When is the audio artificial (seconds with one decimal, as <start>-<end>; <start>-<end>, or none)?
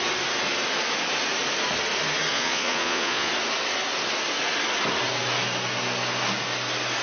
2.3-3.3